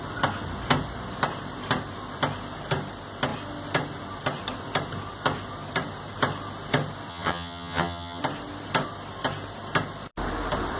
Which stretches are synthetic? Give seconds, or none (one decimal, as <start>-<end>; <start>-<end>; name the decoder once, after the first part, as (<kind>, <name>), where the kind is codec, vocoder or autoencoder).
7.1-8.2 (vocoder, HiFi-GAN)